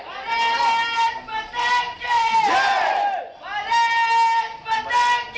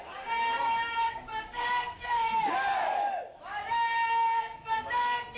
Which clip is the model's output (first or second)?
second